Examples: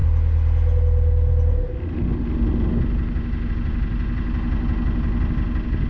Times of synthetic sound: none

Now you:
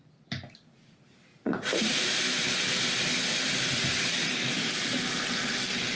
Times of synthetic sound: 1.3-2.2 (vocoder, Vocos)

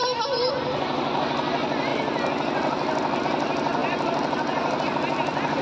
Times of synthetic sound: none

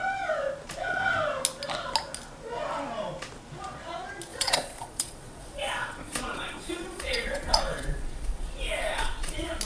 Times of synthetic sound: 4.3-9.6 (vocoder, Vocos)